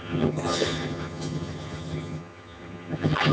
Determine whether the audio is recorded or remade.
remade